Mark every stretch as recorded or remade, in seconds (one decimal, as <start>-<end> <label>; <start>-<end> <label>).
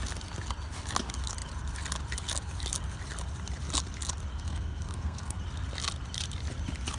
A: 0.0-4.3 recorded; 4.3-5.4 remade; 5.4-7.0 recorded